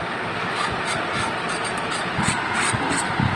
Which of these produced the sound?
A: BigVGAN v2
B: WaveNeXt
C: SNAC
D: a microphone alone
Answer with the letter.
D